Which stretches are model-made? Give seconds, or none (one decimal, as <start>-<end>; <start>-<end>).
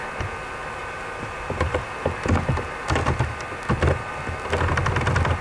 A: 0.8-1.8